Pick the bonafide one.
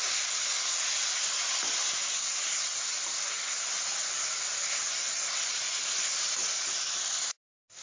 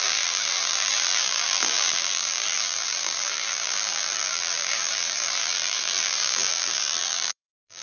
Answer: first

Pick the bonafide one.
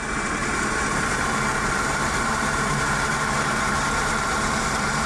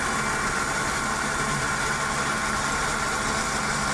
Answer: second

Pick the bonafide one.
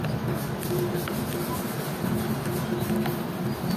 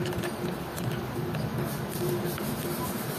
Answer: first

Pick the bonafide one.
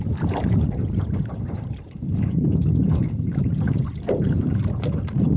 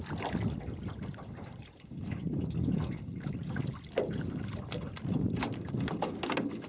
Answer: second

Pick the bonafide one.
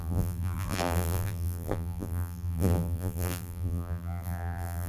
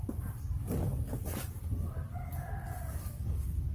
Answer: second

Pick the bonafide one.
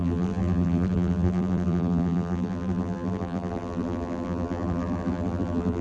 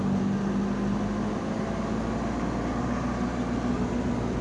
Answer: second